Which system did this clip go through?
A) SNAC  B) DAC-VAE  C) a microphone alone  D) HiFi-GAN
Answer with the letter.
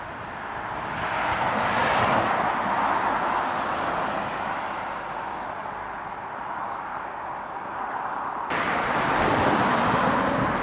C